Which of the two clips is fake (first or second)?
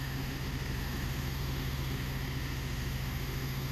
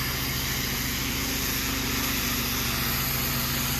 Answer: first